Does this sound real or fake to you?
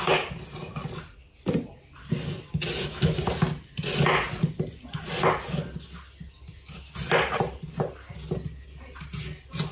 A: real